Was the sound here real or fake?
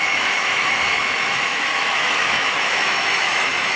fake